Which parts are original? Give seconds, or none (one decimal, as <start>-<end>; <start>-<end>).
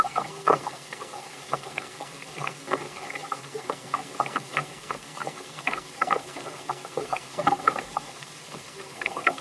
none